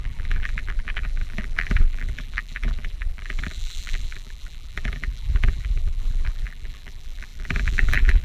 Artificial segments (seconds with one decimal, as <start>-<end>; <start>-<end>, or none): 0.0-8.2